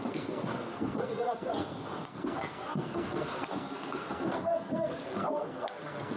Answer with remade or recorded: remade